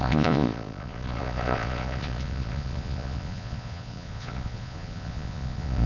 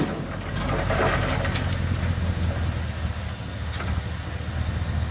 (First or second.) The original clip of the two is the second